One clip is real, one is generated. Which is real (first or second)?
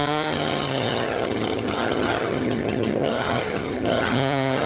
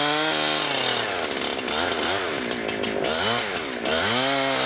second